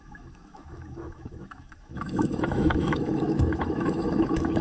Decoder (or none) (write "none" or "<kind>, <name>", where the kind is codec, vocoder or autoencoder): autoencoder, DAC-VAE